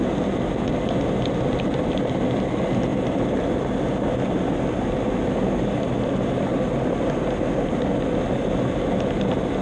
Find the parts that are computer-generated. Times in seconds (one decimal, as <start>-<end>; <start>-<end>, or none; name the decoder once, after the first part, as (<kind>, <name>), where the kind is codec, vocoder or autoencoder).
none